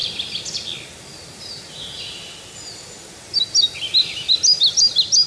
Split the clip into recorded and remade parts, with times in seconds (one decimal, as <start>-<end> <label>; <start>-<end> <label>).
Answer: 0.0-5.3 recorded